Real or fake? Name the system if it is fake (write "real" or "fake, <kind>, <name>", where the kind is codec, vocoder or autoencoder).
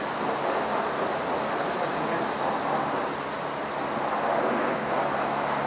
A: real